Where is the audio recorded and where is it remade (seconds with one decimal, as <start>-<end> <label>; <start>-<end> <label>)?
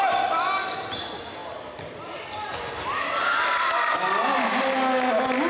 0.0-5.5 recorded